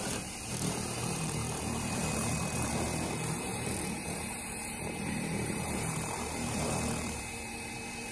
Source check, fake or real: fake